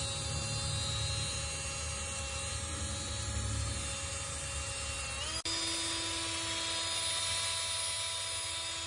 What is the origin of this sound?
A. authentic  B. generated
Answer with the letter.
A